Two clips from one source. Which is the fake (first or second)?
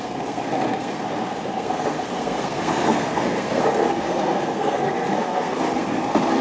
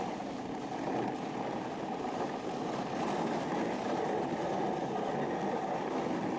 first